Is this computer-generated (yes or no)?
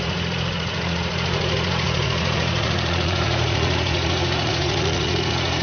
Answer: yes